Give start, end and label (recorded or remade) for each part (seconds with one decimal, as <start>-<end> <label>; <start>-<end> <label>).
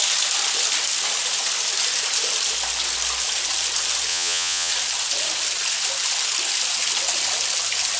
0.0-4.1 recorded; 4.1-4.7 remade; 4.7-8.0 recorded